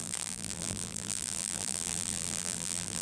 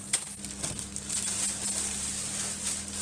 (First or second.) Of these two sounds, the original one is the second